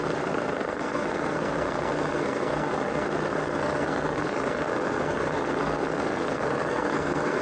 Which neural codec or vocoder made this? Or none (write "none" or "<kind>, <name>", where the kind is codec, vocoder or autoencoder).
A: codec, SNAC